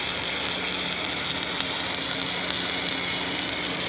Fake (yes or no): no